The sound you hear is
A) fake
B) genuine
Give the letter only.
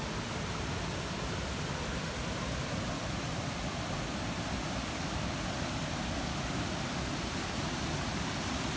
A